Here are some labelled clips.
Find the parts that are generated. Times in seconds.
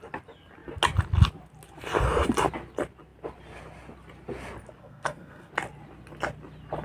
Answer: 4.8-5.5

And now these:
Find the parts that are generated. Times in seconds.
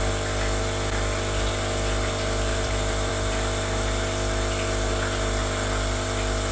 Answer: 2.5-3.1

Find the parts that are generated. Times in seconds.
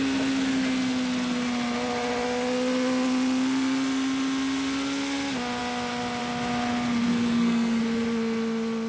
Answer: 7.1-7.8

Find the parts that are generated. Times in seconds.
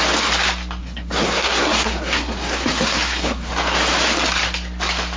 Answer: 0.8-3.5